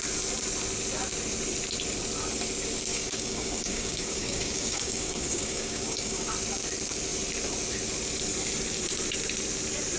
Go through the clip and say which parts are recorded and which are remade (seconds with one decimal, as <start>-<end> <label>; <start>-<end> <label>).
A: 0.0-2.9 recorded; 2.9-6.3 remade; 6.3-10.0 recorded